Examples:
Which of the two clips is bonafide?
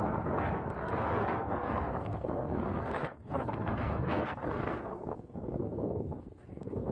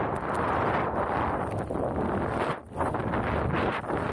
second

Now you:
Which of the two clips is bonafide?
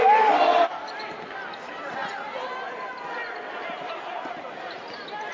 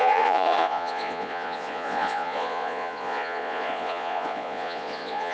first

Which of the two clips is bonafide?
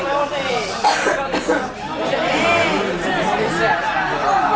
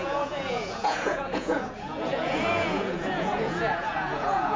first